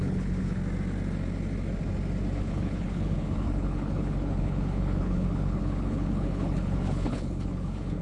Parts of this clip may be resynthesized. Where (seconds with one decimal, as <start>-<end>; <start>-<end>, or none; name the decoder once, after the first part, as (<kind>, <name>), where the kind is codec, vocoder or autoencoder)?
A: 0.0-0.6 (codec, HILCodec); 2.4-8.0